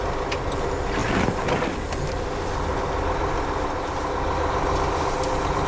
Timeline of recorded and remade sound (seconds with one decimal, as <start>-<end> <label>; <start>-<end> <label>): 0.0-5.7 recorded

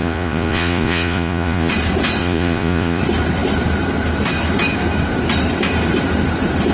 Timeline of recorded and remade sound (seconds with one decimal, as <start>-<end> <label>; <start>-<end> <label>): 0.0-1.7 remade; 1.7-2.2 recorded; 2.2-3.0 remade; 3.0-6.7 recorded